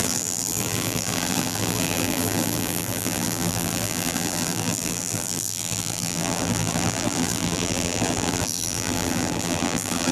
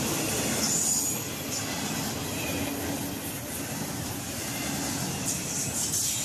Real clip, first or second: second